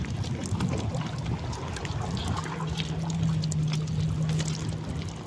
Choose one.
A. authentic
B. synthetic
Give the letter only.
A